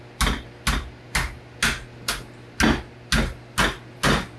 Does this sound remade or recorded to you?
recorded